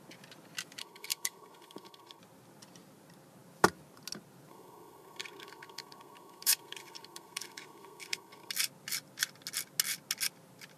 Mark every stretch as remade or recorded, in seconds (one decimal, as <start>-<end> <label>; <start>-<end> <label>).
0.0-0.8 recorded; 0.8-2.2 remade; 2.2-4.5 recorded; 4.5-8.5 remade; 8.5-10.8 recorded